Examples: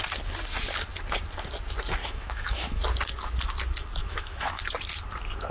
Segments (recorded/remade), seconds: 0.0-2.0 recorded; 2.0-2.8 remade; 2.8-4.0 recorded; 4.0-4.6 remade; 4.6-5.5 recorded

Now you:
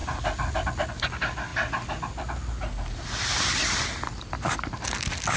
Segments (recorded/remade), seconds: 0.0-5.4 recorded

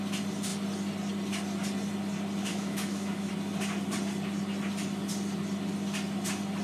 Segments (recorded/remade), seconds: 0.0-2.5 recorded; 2.5-3.3 remade; 3.3-6.6 recorded

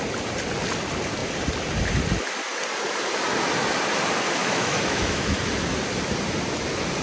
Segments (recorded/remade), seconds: 0.0-4.4 recorded; 4.4-5.4 remade; 5.4-7.0 recorded

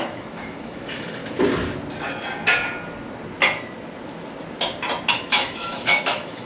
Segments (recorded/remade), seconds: 0.0-1.2 remade; 1.2-5.1 recorded; 5.1-6.5 remade

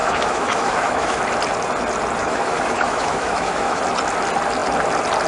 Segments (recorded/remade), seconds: 0.0-1.2 remade; 1.2-2.2 recorded; 2.2-3.8 remade; 3.8-5.3 recorded